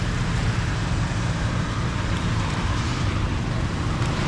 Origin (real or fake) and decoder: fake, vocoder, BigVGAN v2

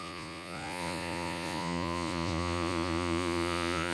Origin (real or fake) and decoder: fake, vocoder, Vocos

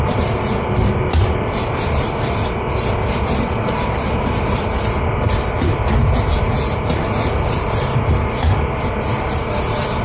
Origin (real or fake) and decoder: real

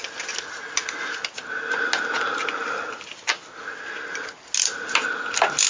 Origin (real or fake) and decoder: real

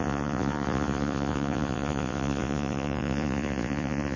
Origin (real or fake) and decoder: fake, vocoder, Vocos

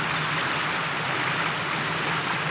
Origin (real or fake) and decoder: real